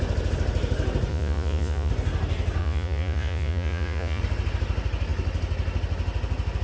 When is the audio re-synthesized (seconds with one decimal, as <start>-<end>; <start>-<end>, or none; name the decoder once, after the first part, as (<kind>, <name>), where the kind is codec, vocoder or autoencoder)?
1.1-1.9 (vocoder, Vocos); 2.6-4.2